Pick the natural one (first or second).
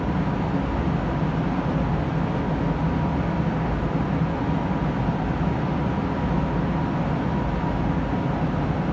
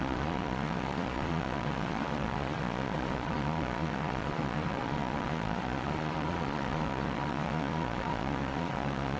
first